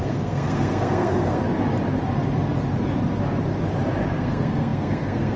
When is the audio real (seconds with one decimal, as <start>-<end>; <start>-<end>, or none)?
1.4-4.1